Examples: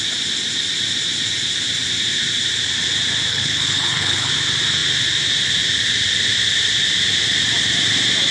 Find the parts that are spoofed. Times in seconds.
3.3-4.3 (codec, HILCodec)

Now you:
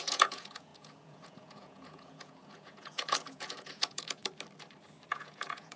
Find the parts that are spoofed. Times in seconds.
0.0-4.2 (vocoder, Vocos); 5.1-5.8